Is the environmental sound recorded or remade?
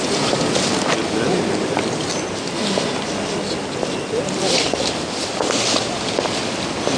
recorded